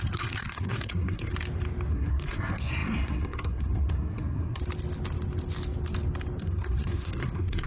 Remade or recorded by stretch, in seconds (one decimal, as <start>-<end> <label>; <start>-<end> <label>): 0.0-1.3 remade; 1.3-1.9 recorded; 1.9-4.6 remade; 4.6-6.4 recorded; 6.4-7.7 remade